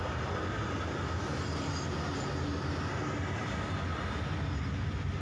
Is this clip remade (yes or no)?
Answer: no